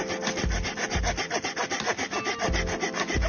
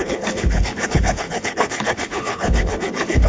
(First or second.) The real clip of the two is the first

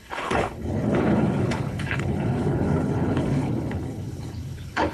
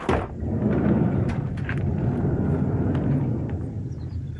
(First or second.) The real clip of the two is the second